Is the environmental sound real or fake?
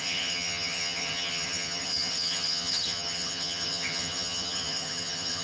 fake